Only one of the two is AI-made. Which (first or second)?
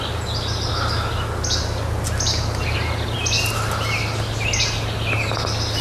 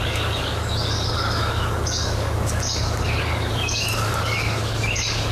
second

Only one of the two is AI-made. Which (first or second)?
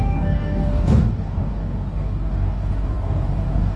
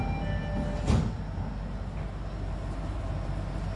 first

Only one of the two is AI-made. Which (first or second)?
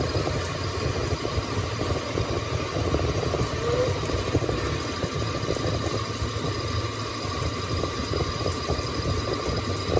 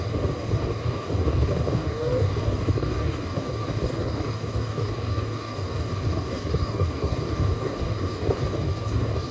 second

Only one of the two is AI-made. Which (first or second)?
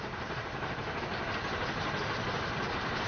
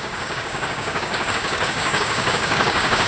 second